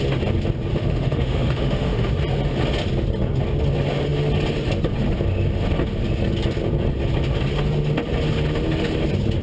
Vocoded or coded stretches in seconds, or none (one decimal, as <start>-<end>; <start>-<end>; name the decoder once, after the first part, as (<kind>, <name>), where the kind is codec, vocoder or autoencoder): 0.7-2.1 (autoencoder, DAC-VAE)